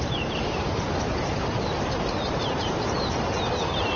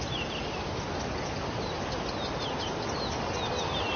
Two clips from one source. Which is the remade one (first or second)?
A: first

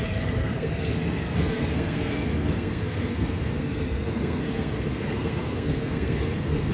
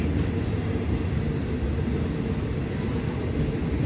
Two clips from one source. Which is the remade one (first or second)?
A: first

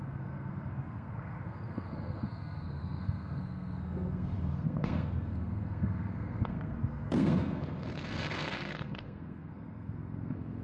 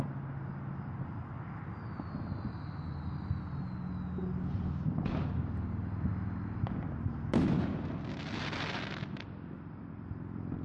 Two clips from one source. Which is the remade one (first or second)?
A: first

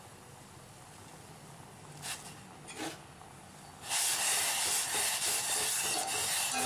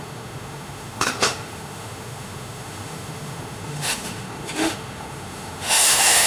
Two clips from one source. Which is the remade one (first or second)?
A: second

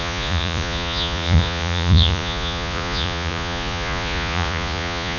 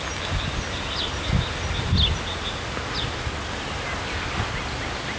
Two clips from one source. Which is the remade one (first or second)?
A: first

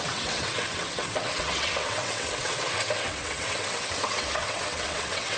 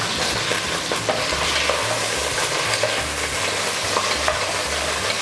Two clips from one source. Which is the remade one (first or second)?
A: first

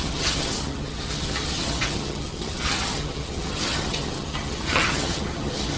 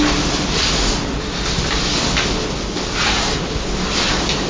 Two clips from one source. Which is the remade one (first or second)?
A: first